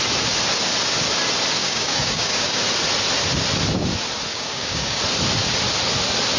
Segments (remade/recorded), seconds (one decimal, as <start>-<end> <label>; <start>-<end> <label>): 0.0-1.6 recorded; 1.6-2.6 remade; 2.6-4.3 recorded; 4.3-5.0 remade; 5.0-6.4 recorded